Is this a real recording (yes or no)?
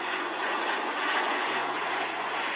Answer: no